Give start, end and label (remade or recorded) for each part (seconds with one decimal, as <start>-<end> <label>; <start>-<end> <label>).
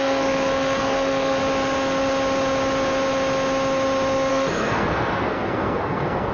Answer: 0.0-1.4 remade; 1.4-4.3 recorded; 4.3-6.3 remade